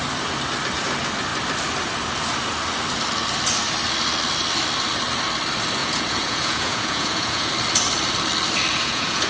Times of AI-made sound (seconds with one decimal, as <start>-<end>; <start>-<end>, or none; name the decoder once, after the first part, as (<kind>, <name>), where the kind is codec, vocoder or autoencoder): 5.8-7.5 (vocoder, Vocos); 8.7-9.3